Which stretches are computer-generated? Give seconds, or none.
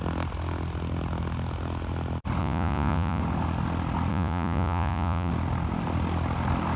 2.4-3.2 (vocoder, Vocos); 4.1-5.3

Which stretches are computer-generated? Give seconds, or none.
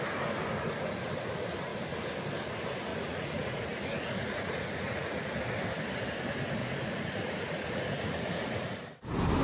2.9-5.3 (vocoder, Vocos); 6.6-8.8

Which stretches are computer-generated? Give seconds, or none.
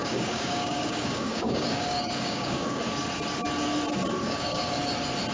0.0-2.8 (codec, DAC); 4.2-4.7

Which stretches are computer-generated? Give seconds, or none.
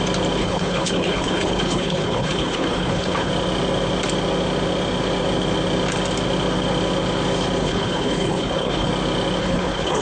0.4-3.3 (codec, HILCodec); 7.6-8.9; 9.4-10.0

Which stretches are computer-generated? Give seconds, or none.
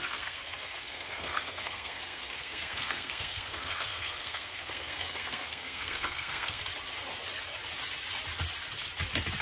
0.0-6.6 (codec, SNAC)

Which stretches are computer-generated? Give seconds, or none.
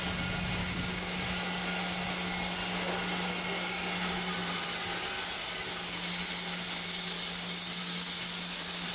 0.6-1.2 (codec, DAC)